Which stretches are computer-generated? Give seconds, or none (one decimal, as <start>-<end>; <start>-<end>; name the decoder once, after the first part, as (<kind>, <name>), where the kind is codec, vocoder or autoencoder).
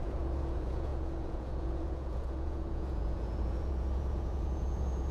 0.0-5.1 (vocoder, Vocos)